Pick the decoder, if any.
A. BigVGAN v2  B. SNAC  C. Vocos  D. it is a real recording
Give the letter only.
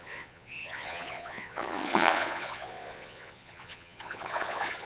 C